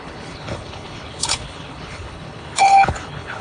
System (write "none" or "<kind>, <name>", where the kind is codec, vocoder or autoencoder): codec, HILCodec